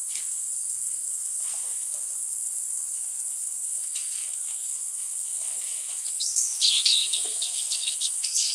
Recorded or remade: remade